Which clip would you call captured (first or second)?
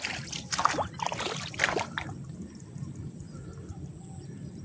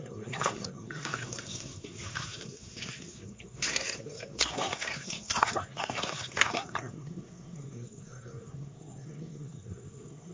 first